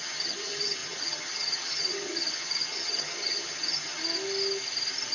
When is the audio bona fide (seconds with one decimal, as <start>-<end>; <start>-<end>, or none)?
4.0-5.1